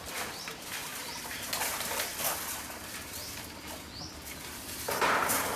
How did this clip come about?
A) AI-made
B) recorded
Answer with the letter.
A